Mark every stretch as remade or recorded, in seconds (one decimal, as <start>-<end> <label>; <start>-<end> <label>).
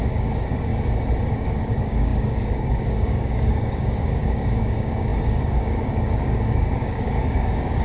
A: 0.0-0.7 remade; 0.7-1.3 recorded; 1.3-7.8 remade